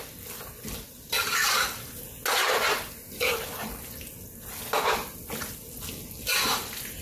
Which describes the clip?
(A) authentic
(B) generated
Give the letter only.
A